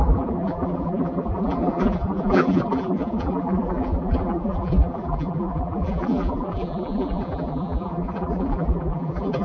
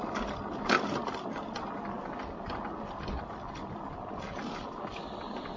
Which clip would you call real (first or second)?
second